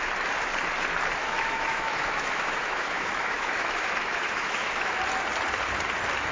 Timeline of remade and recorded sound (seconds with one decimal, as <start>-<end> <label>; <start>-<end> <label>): 0.0-1.2 recorded; 1.2-5.0 remade; 5.0-6.3 recorded